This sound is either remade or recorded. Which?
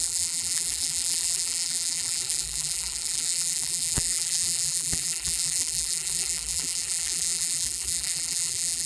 remade